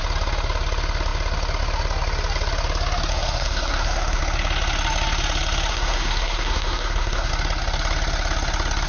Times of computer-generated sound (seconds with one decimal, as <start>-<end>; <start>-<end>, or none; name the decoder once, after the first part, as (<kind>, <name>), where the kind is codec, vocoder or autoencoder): 3.1-4.2 (codec, SNAC); 5.7-7.3